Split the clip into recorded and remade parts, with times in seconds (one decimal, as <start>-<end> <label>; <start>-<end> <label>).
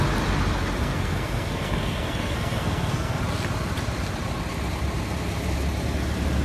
0.0-0.8 recorded; 0.8-3.2 remade; 3.2-6.4 recorded